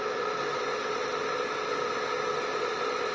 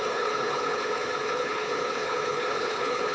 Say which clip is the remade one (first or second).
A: second